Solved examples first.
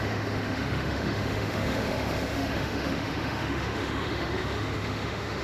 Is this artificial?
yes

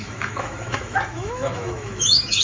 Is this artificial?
yes